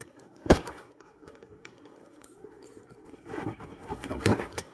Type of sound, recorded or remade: remade